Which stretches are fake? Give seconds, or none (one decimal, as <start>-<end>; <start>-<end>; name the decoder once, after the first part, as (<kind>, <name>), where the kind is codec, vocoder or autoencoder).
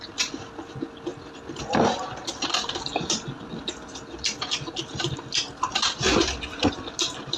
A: 6.1-6.7 (vocoder, BigVGAN v2)